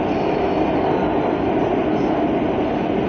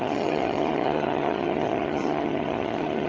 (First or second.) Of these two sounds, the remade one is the second